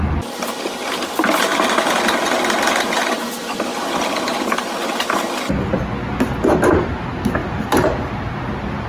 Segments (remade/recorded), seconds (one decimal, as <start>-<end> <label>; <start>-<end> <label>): 0.0-7.4 recorded; 7.4-8.4 remade; 8.4-8.9 recorded